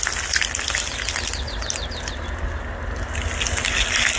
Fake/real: real